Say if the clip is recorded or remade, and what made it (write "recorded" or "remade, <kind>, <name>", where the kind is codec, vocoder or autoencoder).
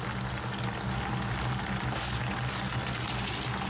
recorded